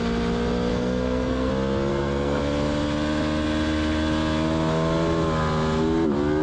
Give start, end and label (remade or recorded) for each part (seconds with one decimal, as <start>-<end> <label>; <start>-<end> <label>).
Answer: 0.0-0.7 recorded; 0.7-1.5 remade; 1.5-1.9 recorded; 1.9-2.4 remade; 2.4-6.4 recorded